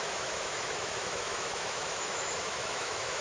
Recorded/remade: remade